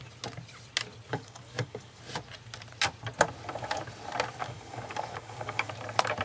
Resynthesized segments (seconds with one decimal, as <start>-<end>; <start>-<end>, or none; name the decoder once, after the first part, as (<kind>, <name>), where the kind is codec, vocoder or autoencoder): 1.1-2.0 (codec, DAC); 4.4-5.7